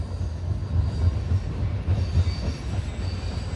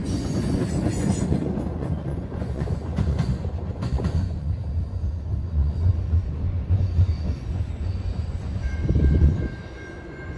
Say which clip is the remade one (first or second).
second